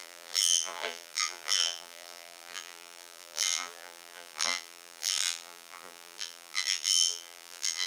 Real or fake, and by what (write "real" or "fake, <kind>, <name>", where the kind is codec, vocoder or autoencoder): fake, vocoder, BigVGAN v2